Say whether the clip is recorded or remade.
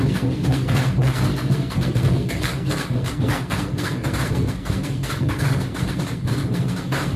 remade